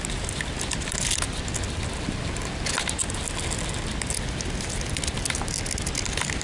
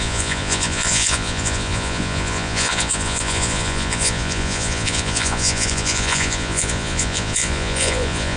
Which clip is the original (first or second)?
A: first